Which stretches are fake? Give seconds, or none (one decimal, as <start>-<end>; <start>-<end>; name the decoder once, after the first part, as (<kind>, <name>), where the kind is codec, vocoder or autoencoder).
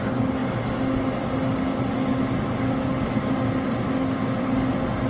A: none